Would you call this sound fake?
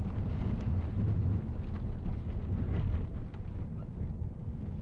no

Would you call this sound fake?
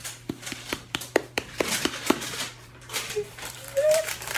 yes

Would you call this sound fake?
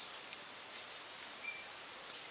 no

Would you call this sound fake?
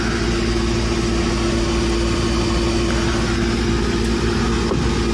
no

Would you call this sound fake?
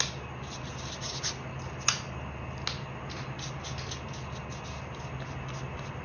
no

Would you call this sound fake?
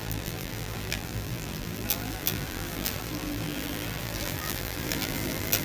yes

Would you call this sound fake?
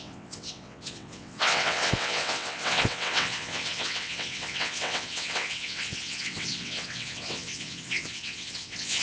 yes